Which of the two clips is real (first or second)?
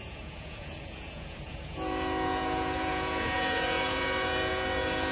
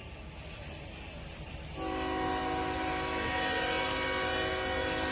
second